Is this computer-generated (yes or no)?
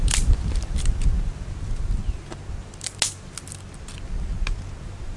no